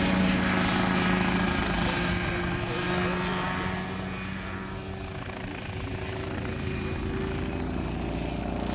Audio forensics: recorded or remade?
recorded